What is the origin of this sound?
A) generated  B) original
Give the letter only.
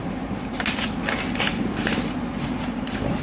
B